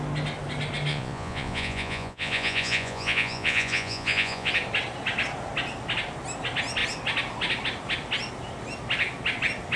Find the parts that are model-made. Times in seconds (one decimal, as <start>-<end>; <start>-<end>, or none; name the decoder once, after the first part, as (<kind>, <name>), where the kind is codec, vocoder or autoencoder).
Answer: 0.9-4.5 (vocoder, Vocos)